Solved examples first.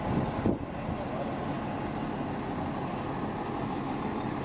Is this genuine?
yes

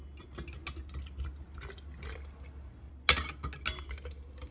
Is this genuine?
yes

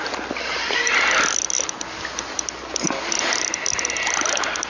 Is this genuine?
yes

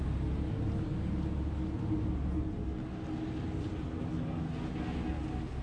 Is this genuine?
yes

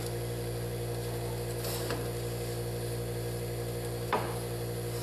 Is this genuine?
yes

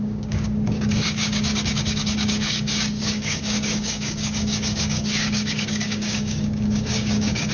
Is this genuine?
no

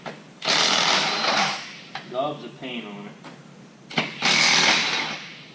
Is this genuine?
yes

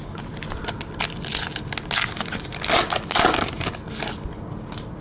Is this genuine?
yes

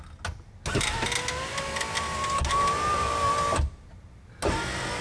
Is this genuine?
yes